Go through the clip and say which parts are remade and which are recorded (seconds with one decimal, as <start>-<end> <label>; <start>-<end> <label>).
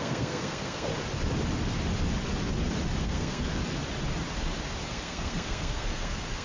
0.0-0.9 remade; 0.9-3.0 recorded; 3.0-3.6 remade; 3.6-4.9 recorded; 4.9-6.4 remade